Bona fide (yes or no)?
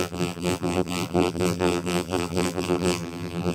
no